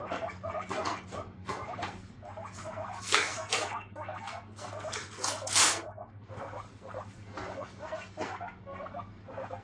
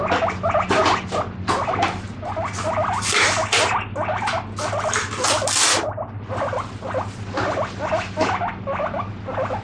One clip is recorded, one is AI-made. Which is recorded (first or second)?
second